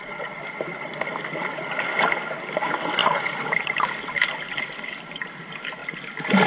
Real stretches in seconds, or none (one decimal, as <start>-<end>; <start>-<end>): 0.0-6.5